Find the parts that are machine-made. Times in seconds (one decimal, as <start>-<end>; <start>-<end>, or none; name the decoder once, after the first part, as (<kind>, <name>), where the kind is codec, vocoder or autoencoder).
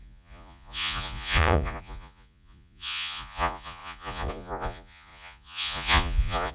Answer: 0.0-6.5 (vocoder, Vocos)